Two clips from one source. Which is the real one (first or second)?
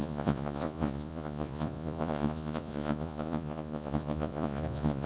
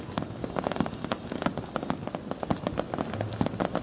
second